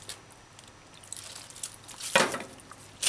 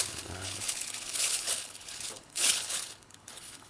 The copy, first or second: second